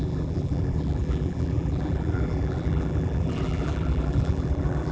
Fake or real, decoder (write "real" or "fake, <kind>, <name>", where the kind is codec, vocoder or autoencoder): fake, vocoder, BigVGAN v2